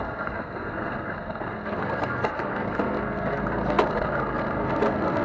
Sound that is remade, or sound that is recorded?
remade